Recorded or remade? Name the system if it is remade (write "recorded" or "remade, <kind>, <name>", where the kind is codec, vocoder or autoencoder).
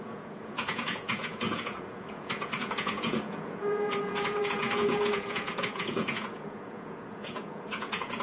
remade, vocoder, Vocos